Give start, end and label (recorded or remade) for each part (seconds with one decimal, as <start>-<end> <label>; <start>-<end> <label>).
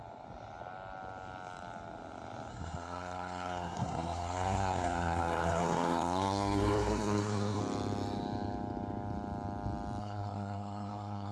0.0-2.5 recorded; 2.5-7.6 remade; 7.6-10.0 recorded; 10.0-11.3 remade